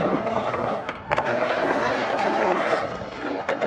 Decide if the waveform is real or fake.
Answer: fake